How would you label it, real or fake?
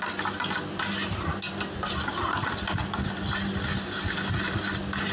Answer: real